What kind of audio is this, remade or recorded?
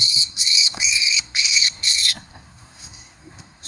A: remade